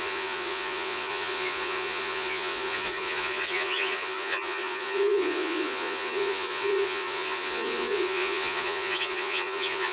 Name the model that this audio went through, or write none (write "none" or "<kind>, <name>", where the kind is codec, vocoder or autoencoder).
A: vocoder, Vocos